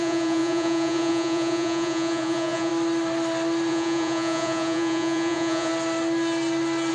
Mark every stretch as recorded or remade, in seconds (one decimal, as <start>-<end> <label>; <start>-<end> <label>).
0.0-2.7 remade; 2.7-3.7 recorded; 3.7-5.7 remade; 5.7-6.9 recorded